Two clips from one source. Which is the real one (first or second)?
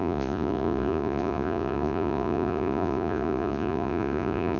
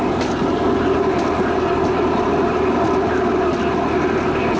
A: second